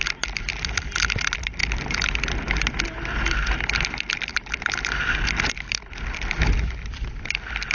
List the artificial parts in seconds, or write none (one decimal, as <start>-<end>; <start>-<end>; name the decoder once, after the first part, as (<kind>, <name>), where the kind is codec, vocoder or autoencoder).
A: none